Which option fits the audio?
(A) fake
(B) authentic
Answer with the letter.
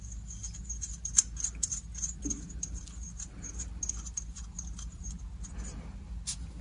B